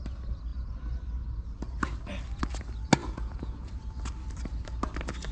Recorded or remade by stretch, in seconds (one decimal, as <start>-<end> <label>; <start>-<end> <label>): 0.0-3.0 recorded; 3.0-3.7 remade; 3.7-5.3 recorded